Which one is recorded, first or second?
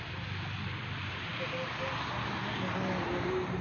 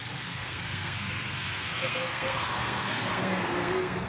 first